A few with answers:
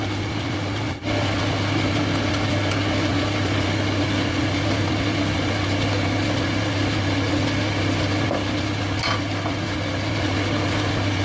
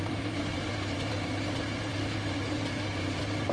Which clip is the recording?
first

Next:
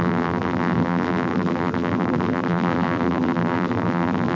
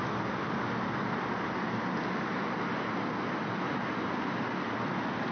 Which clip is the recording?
second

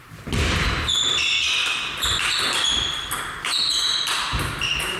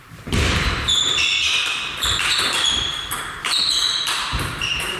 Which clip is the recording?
first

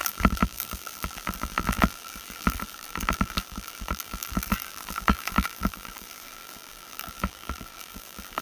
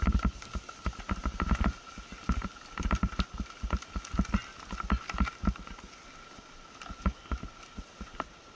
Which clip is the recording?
second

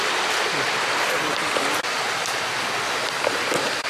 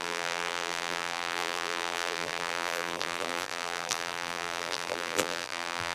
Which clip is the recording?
first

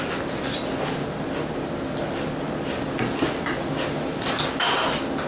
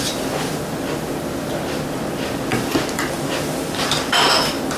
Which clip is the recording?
first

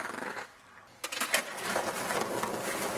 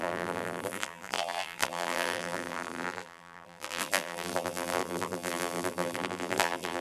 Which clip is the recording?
first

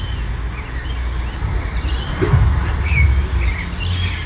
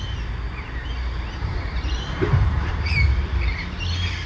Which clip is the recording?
first